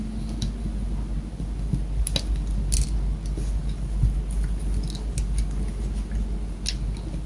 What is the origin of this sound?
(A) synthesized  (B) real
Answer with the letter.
B